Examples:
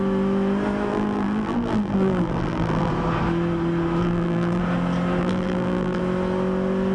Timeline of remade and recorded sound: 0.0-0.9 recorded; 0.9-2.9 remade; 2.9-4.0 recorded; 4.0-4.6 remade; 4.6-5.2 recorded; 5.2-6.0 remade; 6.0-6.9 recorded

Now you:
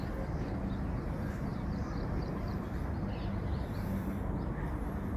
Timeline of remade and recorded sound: 0.0-1.5 recorded; 1.5-4.6 remade; 4.6-5.2 recorded

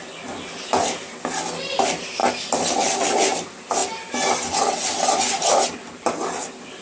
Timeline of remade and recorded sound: 0.0-6.8 recorded